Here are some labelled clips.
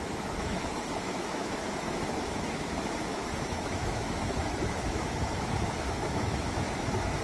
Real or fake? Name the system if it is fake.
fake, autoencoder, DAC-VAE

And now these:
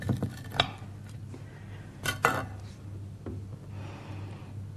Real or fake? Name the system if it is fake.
real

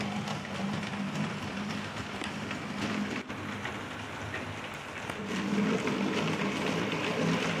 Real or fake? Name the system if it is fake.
real